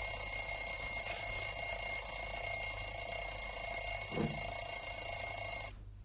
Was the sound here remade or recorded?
recorded